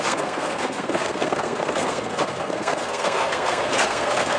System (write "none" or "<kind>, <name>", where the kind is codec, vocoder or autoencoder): codec, SNAC